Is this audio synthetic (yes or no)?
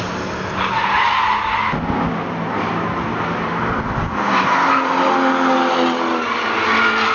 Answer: no